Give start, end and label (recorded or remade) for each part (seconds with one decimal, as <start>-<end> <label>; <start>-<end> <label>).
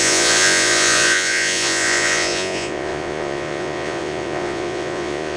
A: 0.0-5.4 remade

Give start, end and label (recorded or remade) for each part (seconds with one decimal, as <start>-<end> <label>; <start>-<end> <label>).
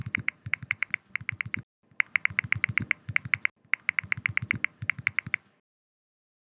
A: 0.0-0.9 remade; 0.9-6.4 recorded